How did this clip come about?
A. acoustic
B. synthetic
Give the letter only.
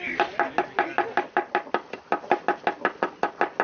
A